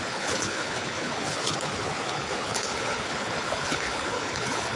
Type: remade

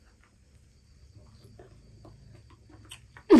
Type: recorded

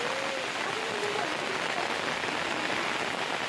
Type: recorded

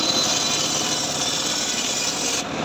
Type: recorded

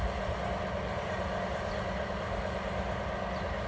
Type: recorded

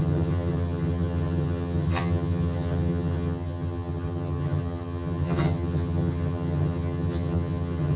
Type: remade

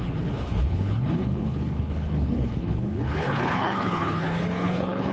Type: remade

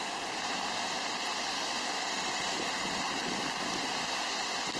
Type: recorded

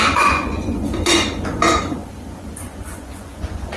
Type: remade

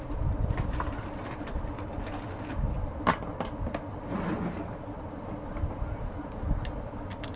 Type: recorded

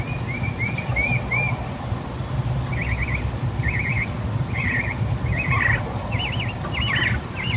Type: recorded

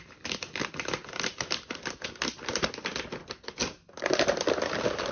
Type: recorded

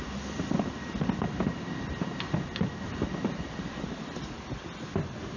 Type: recorded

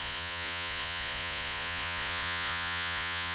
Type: remade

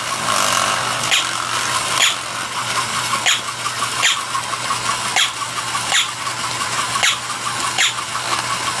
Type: recorded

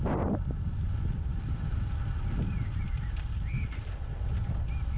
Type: recorded